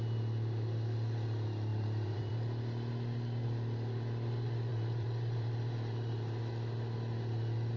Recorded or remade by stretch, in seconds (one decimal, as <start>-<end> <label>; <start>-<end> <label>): 0.0-1.7 recorded; 1.7-2.3 remade; 2.3-4.7 recorded; 4.7-6.4 remade; 6.4-7.8 recorded